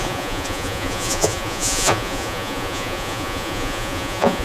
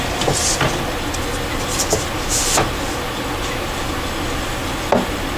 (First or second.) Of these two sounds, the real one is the second